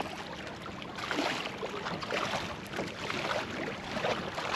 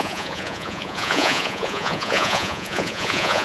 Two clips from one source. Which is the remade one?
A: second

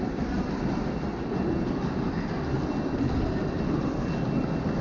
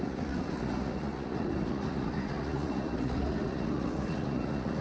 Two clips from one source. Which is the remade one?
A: second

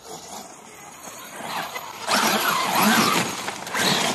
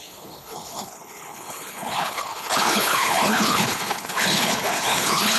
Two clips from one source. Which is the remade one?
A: second